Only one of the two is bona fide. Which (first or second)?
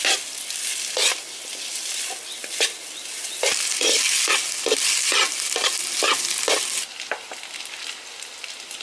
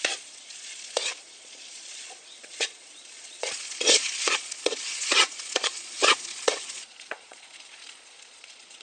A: first